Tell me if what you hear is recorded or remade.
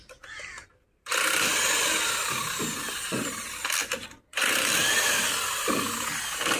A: recorded